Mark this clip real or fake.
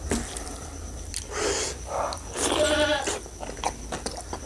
real